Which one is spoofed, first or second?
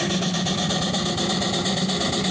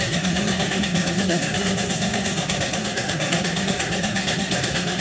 second